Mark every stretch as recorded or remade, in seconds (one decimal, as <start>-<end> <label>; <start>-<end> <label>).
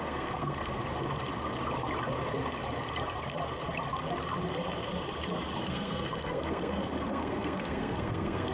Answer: 0.0-0.8 remade; 0.8-5.6 recorded; 5.6-8.5 remade